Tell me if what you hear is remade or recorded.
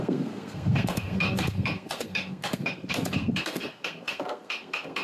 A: remade